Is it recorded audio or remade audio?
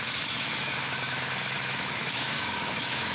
remade